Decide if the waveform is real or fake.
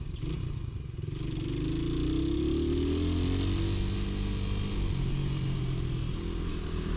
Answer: real